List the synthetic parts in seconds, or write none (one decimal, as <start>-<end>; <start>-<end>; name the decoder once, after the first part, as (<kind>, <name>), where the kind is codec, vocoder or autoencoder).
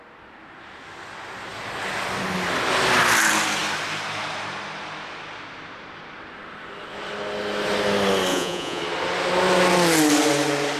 8.3-8.8 (vocoder, Vocos)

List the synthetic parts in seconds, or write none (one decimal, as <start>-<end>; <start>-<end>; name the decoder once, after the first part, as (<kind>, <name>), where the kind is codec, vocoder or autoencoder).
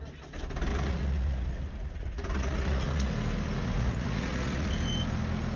0.7-3.1 (vocoder, Vocos); 3.6-4.7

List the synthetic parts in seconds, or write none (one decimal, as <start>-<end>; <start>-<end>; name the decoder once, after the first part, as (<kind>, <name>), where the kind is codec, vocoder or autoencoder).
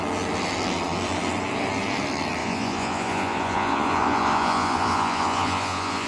2.4-6.1 (vocoder, Vocos)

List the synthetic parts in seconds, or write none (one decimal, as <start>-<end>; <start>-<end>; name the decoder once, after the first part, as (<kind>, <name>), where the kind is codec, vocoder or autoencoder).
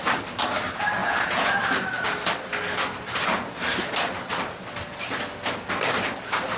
1.0-1.5 (vocoder, Vocos)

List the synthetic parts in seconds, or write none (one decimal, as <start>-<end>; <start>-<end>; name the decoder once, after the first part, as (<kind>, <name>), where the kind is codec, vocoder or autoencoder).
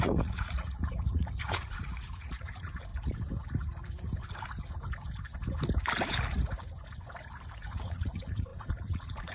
0.0-2.9 (vocoder, Vocos); 7.6-9.3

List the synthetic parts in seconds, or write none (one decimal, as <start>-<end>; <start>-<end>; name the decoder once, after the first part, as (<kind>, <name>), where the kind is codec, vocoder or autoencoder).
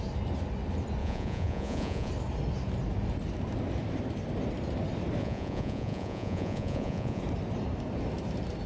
1.0-2.1 (vocoder, Vocos); 5.2-7.2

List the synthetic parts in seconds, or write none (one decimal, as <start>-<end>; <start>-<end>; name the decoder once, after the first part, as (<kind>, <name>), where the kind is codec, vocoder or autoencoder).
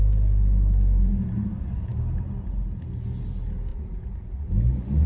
3.7-4.5 (vocoder, Vocos)